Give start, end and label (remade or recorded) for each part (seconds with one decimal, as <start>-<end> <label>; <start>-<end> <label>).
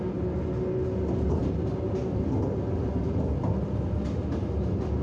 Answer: 0.0-5.0 recorded